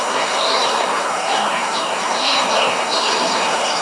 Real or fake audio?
fake